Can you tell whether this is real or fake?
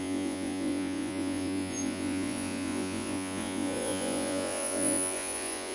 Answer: fake